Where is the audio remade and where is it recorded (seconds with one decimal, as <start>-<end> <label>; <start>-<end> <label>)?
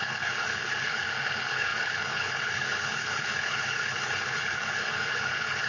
0.0-5.7 remade